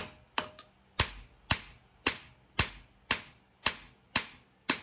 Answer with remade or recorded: recorded